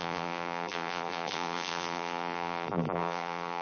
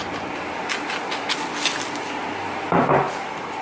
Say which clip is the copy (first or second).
first